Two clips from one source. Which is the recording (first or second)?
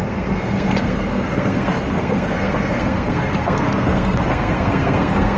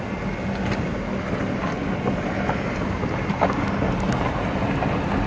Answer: second